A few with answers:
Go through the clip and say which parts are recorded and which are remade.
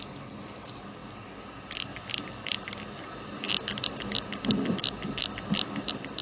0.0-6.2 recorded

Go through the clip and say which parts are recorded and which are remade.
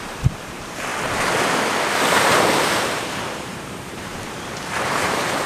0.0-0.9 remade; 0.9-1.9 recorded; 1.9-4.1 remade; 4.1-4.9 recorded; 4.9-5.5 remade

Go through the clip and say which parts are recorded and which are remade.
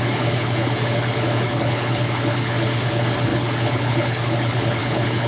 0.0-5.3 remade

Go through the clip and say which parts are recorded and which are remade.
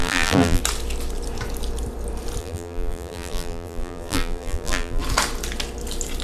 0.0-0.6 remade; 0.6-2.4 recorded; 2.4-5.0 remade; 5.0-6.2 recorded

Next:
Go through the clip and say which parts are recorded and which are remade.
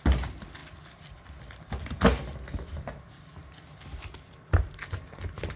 0.0-5.6 recorded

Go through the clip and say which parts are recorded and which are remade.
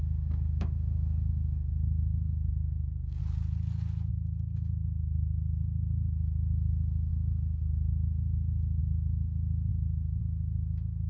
0.0-3.2 remade; 3.2-4.1 recorded; 4.1-11.1 remade